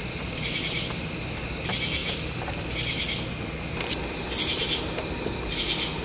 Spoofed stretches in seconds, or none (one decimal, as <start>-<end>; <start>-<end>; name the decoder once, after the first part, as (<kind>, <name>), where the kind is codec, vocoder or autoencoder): none